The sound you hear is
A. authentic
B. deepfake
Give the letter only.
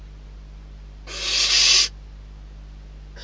A